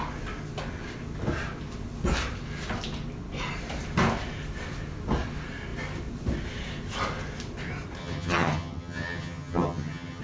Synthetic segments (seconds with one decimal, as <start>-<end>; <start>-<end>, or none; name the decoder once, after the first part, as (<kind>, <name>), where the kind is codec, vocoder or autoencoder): 8.0-10.2 (vocoder, HiFi-GAN)

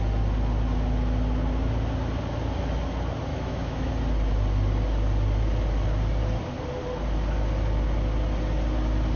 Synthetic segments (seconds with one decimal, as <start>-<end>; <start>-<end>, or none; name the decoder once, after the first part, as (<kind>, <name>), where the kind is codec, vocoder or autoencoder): 3.3-3.9 (autoencoder, DAC-VAE)

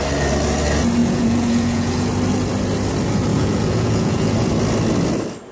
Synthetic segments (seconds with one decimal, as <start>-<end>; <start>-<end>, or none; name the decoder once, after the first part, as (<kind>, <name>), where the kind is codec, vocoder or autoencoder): 1.0-2.1 (vocoder, Vocos); 3.3-4.5